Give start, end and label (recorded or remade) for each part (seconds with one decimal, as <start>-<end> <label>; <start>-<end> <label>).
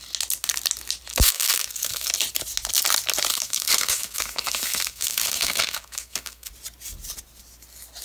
0.0-1.1 recorded; 1.1-2.1 remade; 2.1-3.3 recorded; 3.3-6.5 remade; 6.5-8.0 recorded